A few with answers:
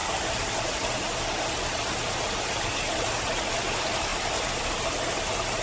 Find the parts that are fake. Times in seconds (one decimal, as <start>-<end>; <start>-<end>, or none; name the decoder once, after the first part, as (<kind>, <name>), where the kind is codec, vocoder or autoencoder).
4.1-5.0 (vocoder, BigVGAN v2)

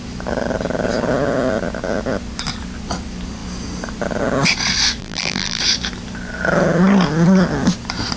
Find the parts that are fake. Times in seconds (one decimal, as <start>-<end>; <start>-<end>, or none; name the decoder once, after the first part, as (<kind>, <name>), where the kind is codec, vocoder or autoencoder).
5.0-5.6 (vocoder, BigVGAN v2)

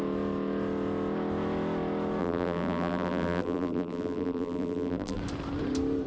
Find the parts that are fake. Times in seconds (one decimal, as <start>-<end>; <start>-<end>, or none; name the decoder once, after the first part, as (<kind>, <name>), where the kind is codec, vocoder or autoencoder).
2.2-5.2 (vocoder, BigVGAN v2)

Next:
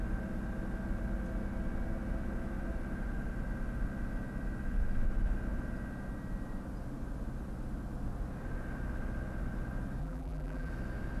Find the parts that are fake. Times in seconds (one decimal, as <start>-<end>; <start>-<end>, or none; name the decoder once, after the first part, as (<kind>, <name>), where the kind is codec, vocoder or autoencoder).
10.0-10.7 (vocoder, BigVGAN v2)